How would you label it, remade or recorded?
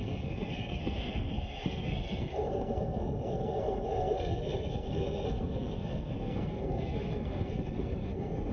remade